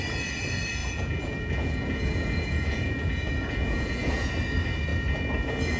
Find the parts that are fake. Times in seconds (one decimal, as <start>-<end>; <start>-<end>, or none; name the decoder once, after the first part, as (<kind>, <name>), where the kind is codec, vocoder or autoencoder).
0.8-4.3 (vocoder, Vocos)